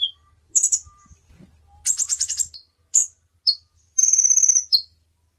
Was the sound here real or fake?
real